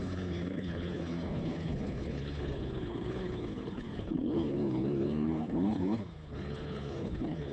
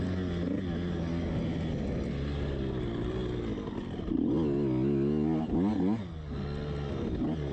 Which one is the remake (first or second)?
first